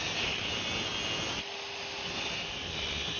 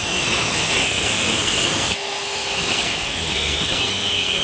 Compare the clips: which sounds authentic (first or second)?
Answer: first